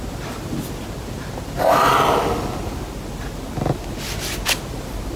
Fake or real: real